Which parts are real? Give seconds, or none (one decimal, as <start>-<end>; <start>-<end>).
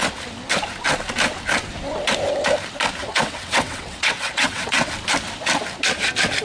0.0-3.0; 4.9-6.4